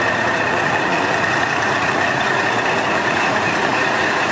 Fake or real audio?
fake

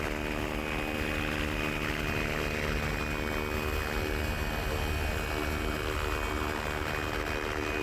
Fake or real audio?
real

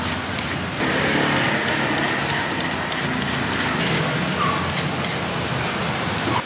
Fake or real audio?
real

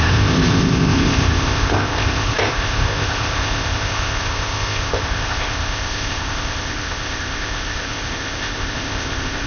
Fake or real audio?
fake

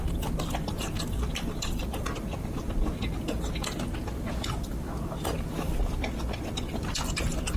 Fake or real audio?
real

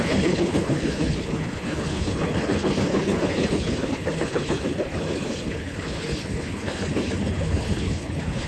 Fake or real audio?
fake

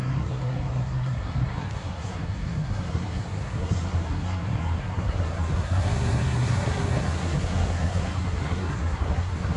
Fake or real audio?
fake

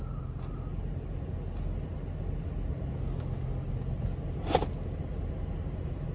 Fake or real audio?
real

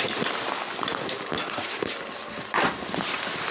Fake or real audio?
fake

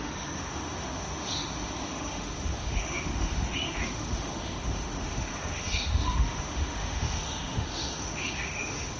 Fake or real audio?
fake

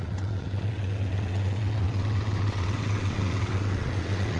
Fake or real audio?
fake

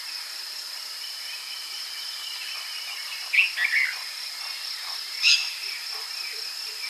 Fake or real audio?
real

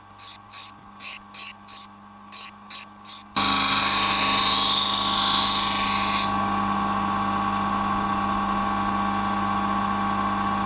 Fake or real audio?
real